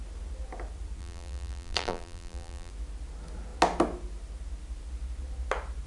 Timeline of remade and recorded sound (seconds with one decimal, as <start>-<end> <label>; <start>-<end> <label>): 0.0-1.0 recorded; 1.0-2.7 remade; 2.7-5.9 recorded